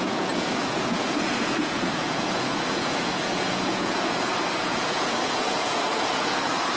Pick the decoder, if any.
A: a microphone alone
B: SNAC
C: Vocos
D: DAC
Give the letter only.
C